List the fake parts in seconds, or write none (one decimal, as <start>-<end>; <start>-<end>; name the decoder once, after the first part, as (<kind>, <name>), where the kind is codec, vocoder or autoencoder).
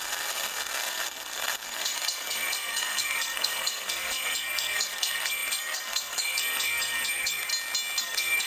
0.0-7.5 (codec, SNAC); 8.0-8.5